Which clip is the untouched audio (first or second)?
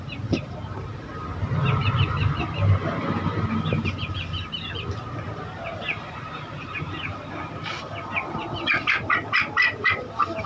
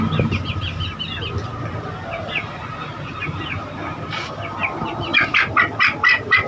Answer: second